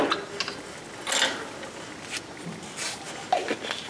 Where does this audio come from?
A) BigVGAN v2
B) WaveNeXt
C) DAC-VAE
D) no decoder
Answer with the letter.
D